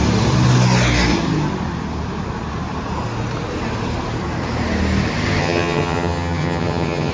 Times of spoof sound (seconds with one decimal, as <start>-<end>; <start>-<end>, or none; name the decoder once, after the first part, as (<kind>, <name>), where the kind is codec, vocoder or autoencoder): 5.4-7.1 (vocoder, HiFi-GAN)